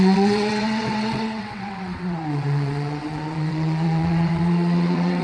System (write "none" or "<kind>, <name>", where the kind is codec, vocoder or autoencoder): vocoder, WaveNeXt